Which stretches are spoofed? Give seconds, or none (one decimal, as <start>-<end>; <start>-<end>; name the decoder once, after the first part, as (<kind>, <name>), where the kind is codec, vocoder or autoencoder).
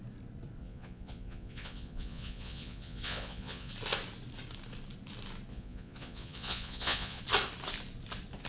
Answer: 0.6-3.7 (vocoder, Vocos); 5.5-7.2